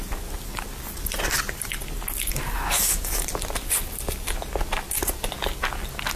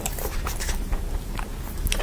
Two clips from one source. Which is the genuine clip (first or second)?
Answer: first